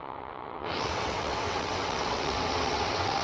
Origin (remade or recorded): remade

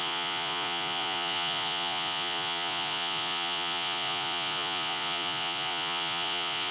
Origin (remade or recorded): remade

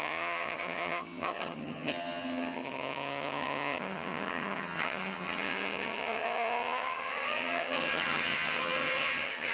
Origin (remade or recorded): remade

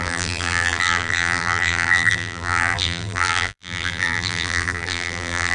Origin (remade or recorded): remade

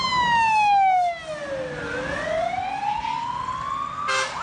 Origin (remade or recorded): recorded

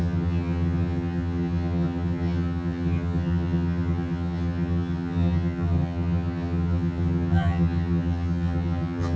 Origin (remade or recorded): remade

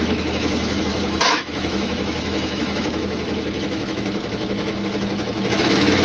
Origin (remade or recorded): remade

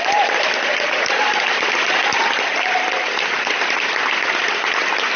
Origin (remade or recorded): recorded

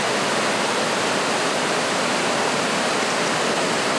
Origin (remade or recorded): recorded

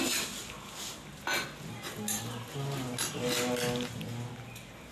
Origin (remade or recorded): recorded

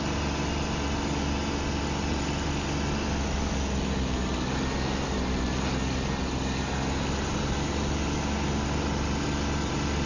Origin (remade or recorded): recorded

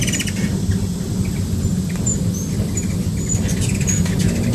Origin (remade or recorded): recorded